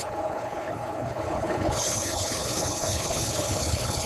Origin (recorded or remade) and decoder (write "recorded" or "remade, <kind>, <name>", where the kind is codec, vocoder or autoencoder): remade, codec, HILCodec